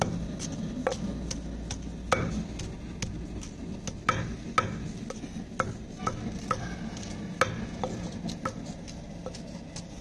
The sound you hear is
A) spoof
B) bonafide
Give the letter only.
B